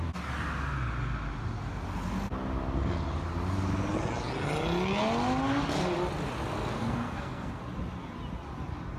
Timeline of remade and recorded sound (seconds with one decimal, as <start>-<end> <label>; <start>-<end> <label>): 0.0-6.8 recorded; 6.8-7.6 remade; 7.6-9.0 recorded